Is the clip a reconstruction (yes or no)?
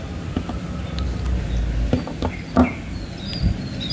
no